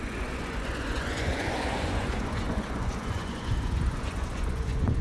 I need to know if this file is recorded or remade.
remade